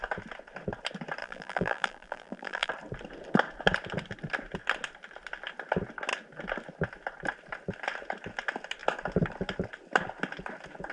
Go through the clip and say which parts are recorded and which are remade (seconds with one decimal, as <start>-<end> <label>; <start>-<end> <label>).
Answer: 0.0-1.2 recorded; 1.2-2.7 remade; 2.7-10.9 recorded